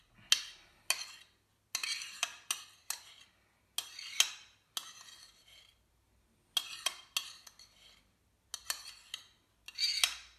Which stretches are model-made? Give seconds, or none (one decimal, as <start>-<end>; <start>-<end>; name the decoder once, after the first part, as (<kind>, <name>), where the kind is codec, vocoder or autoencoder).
none